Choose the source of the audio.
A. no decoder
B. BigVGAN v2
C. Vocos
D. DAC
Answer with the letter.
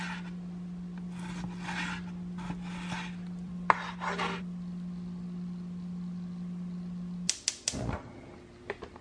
A